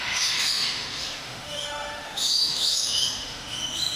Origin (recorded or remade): remade